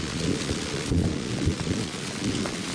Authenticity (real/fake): fake